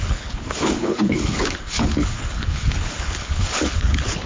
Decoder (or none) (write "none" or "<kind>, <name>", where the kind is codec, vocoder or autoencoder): codec, HILCodec